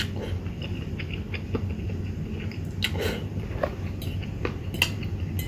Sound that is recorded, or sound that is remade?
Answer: recorded